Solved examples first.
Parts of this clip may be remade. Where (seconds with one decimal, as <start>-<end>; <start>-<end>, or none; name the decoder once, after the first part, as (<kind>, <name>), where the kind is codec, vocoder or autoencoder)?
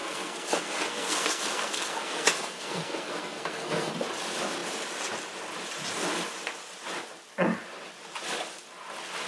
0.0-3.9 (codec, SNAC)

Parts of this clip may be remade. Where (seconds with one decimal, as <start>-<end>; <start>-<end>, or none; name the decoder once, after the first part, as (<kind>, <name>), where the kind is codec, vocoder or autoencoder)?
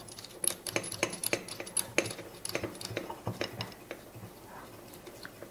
none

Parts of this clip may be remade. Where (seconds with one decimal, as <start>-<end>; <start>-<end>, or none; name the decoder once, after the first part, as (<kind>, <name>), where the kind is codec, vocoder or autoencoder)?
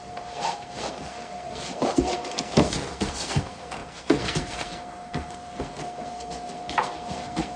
0.0-7.6 (codec, SNAC)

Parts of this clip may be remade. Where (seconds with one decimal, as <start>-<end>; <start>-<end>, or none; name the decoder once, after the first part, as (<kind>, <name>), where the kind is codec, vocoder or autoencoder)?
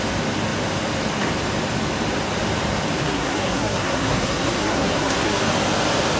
3.0-5.4 (codec, SNAC)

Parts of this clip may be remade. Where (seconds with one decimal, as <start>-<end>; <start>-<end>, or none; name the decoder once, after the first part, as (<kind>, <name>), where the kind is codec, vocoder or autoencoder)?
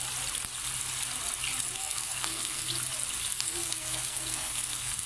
1.8-2.7 (codec, SNAC); 3.3-5.1